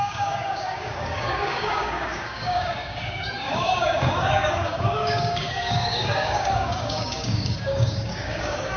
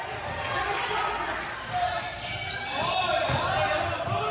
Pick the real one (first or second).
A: second